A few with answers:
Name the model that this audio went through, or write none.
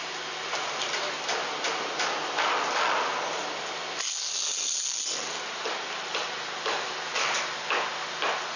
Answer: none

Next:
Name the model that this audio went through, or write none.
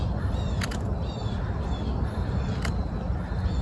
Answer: none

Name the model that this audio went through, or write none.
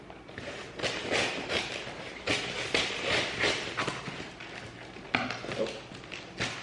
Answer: none